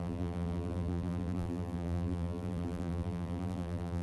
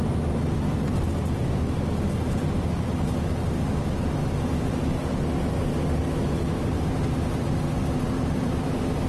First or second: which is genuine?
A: second